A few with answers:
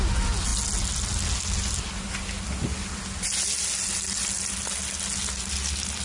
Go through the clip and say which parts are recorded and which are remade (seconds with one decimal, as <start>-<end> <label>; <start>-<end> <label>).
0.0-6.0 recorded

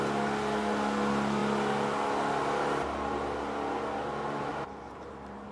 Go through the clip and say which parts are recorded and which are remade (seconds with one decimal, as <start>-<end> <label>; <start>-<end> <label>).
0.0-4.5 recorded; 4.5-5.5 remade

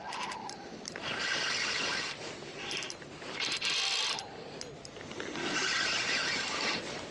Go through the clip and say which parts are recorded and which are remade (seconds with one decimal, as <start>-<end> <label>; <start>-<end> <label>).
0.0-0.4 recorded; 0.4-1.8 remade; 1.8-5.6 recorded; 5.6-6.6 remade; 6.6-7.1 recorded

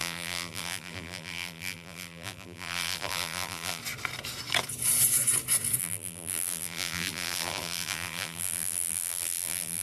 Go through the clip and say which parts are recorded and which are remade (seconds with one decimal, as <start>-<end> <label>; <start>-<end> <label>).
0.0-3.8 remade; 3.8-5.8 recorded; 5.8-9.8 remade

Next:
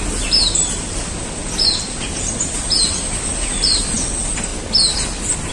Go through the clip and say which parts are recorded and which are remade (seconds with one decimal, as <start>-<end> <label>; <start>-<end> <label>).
0.0-5.5 recorded